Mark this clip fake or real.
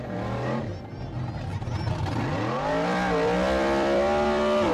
real